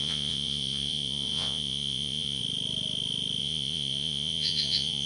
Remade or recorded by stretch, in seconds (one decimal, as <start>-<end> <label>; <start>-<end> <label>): 0.0-2.4 remade; 2.4-3.4 recorded; 3.4-5.1 remade